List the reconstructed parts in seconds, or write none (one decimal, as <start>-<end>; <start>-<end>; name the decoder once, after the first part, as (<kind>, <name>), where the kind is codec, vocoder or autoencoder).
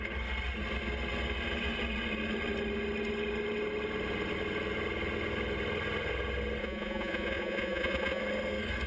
6.6-8.2 (vocoder, Vocos)